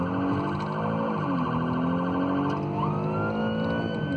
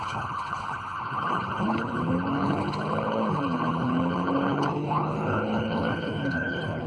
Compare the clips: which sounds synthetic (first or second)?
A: second